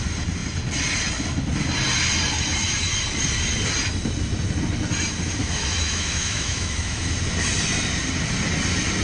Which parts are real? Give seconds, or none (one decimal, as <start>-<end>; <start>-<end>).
0.0-5.4; 7.1-9.0